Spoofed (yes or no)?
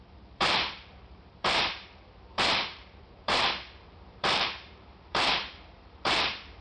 yes